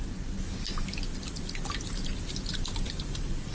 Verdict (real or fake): real